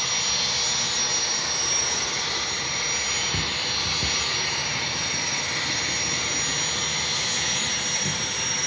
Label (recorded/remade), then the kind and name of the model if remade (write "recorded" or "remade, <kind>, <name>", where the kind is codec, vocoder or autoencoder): recorded